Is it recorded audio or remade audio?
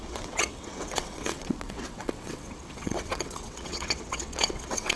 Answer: remade